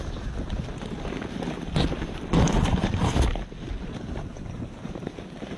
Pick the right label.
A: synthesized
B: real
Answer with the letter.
B